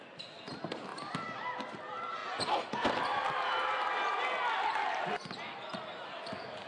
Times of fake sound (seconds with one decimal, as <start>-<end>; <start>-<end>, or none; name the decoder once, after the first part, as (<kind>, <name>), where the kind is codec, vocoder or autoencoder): none

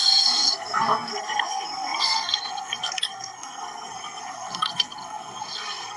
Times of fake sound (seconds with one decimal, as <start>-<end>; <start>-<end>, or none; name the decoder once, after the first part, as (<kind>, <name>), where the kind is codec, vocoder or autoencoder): 0.0-6.0 (codec, SNAC)

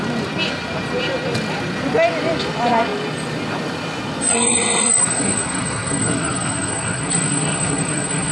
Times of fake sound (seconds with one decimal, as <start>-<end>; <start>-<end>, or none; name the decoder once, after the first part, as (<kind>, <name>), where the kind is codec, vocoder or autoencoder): 4.3-8.3 (codec, SNAC)

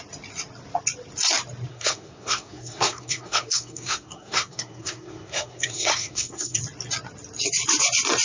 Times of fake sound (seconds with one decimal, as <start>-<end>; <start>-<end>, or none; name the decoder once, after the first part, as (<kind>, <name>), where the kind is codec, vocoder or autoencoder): 1.7-6.6 (codec, SNAC)